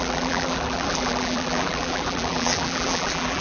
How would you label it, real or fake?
fake